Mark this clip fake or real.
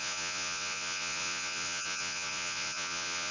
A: fake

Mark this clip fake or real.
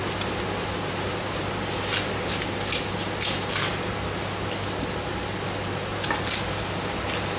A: real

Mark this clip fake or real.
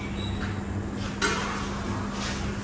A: real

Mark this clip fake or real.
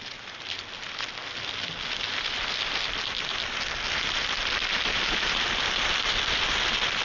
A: real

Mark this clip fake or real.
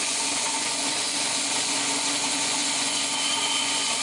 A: fake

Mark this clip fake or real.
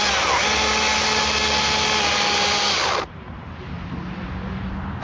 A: real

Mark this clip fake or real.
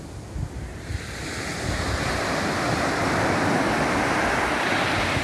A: real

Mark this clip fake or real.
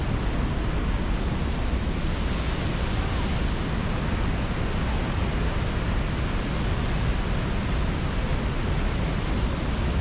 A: real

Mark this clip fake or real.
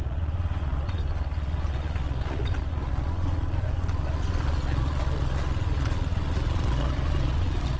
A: fake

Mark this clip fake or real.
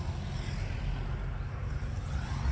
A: real